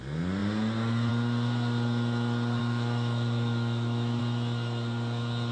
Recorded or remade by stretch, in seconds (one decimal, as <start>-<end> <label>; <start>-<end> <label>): 0.0-2.6 recorded; 2.6-4.2 remade; 4.2-5.5 recorded